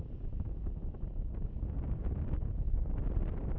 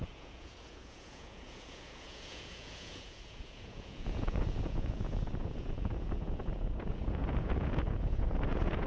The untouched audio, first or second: first